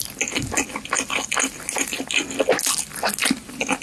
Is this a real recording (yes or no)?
yes